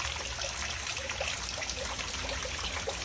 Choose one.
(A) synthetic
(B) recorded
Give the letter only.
B